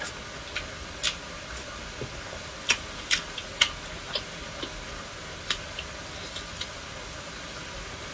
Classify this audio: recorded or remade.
recorded